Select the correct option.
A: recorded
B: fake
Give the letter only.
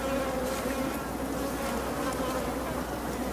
A